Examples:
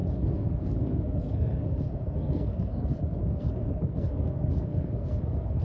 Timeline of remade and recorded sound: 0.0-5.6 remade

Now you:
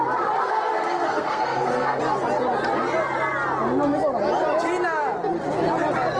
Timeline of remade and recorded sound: 0.0-0.4 recorded; 0.4-2.0 remade; 2.0-6.2 recorded

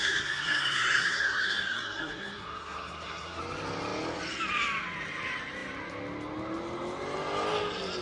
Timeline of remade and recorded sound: 0.0-3.4 remade; 3.4-8.0 recorded

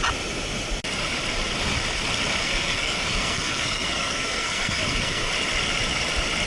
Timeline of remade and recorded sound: 0.0-2.4 recorded; 2.4-5.3 remade; 5.3-6.5 recorded